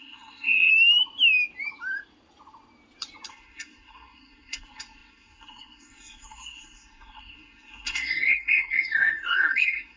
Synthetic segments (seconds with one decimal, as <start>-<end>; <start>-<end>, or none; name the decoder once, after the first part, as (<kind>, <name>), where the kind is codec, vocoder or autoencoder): 0.0-0.7 (codec, SNAC); 3.3-10.0